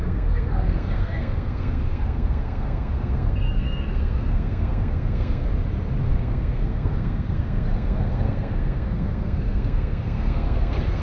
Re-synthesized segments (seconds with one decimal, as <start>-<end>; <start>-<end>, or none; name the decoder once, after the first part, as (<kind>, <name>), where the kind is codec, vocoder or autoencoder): 0.0-5.5 (codec, SNAC); 6.0-11.0